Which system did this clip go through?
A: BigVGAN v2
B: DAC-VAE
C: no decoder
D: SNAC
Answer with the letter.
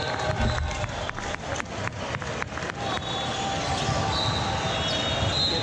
C